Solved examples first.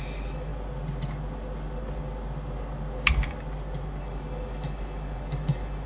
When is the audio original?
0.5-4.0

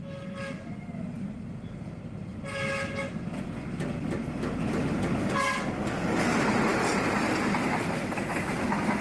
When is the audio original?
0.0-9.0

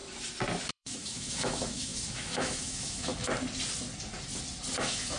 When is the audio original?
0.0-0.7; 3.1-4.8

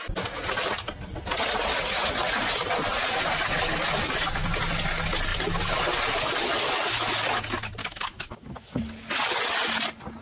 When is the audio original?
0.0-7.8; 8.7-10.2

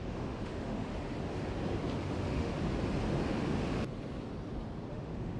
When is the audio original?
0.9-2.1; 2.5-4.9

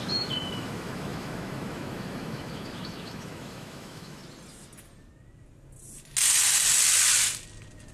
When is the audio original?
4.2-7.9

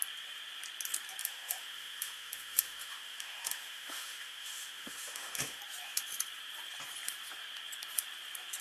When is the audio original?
0.0-1.2; 5.6-8.6

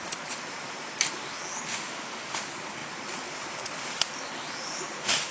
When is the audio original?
0.0-1.7; 2.4-5.3